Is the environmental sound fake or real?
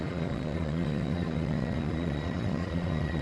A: fake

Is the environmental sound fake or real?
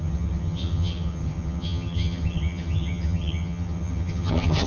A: fake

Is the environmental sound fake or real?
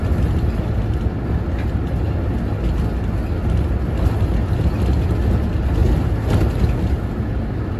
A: real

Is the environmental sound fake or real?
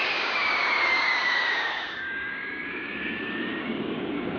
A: fake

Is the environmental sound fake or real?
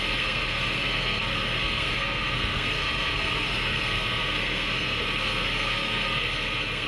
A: fake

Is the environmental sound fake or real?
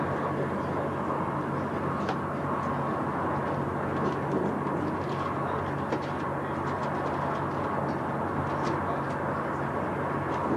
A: real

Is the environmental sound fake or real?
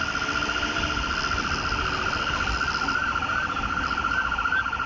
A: fake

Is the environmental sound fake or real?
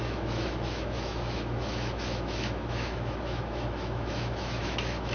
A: fake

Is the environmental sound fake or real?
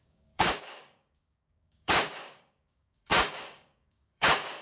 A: fake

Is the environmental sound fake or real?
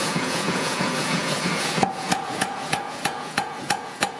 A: fake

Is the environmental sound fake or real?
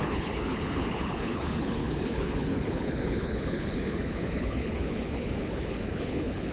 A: fake